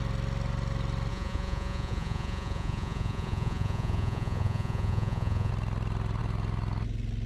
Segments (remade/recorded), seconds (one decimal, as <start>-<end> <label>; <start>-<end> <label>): 0.0-1.1 recorded; 1.1-5.5 remade; 5.5-7.3 recorded